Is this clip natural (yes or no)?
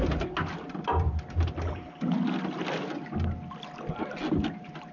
yes